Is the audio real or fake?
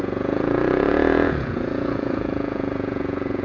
fake